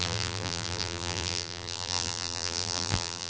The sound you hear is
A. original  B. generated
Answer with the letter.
B